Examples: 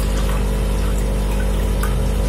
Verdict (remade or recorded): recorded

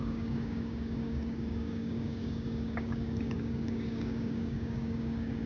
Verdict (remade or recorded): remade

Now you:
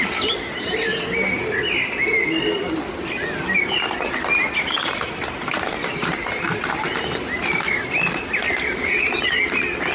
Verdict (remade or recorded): recorded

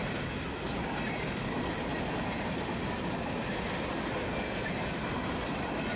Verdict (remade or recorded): recorded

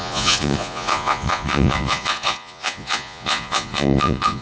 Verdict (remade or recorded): remade